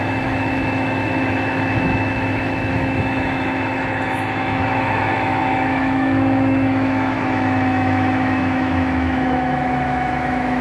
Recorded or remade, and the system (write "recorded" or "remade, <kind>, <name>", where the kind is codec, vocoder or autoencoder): remade, autoencoder, DAC-VAE